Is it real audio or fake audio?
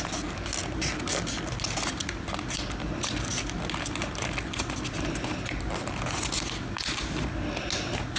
real